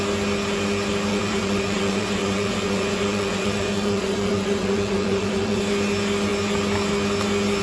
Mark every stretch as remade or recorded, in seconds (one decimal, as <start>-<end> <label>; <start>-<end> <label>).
0.0-1.1 recorded; 1.1-5.6 remade; 5.6-7.6 recorded